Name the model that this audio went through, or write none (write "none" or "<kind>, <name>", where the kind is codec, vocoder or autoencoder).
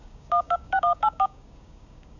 codec, DAC